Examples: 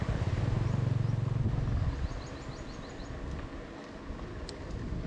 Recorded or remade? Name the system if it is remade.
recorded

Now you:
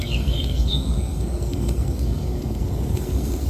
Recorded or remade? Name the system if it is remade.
remade, codec, SNAC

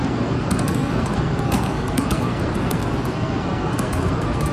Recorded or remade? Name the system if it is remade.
remade, codec, SNAC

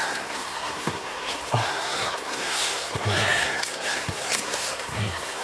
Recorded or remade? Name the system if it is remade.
remade, codec, SNAC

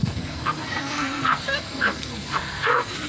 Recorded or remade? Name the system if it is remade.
remade, codec, SNAC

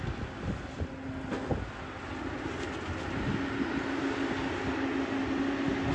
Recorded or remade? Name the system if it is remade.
recorded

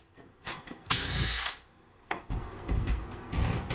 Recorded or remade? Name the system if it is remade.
remade, codec, SNAC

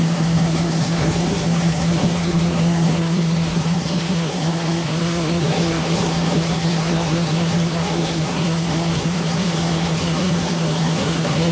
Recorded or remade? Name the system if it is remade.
remade, codec, SNAC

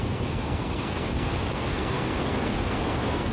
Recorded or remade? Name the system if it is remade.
remade, codec, SNAC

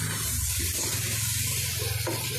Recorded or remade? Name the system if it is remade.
recorded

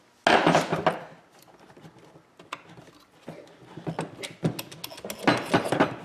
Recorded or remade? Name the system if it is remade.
recorded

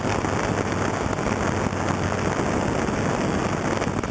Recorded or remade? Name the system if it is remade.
recorded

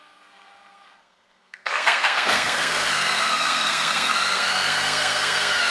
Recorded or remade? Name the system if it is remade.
remade, codec, SNAC